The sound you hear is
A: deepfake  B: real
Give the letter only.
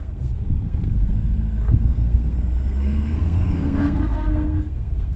A